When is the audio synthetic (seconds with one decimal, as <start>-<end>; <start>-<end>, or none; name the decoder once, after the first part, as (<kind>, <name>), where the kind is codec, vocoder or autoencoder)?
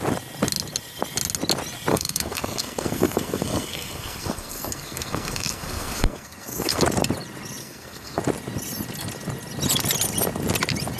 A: 1.9-6.8 (codec, SNAC); 7.6-8.2